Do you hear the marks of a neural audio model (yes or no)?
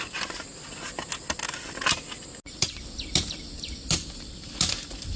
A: no